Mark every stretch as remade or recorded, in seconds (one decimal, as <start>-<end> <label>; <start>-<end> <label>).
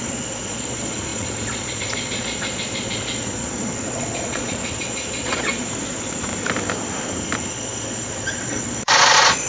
0.0-6.3 remade; 6.3-7.5 recorded; 7.5-9.5 remade